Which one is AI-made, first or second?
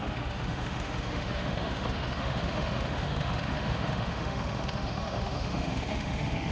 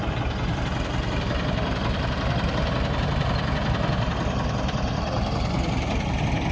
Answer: first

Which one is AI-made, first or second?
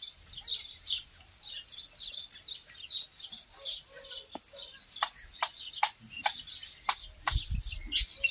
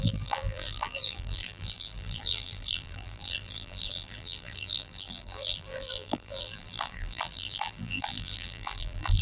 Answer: second